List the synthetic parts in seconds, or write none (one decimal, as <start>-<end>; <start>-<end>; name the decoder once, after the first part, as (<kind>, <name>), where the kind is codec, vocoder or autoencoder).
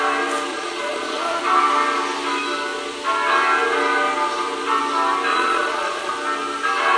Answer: 0.5-1.4 (vocoder, Vocos); 5.3-6.1